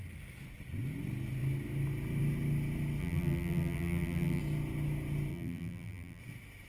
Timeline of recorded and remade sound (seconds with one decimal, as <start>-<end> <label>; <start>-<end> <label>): 0.0-3.0 recorded; 3.0-4.4 remade; 4.4-5.3 recorded; 5.3-6.2 remade; 6.2-6.7 recorded